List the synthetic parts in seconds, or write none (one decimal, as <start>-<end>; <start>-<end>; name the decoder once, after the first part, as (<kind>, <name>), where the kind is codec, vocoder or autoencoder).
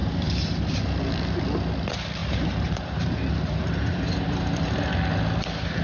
0.0-0.6 (vocoder, BigVGAN v2); 2.2-4.8